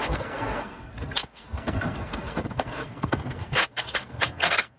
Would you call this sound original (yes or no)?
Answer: no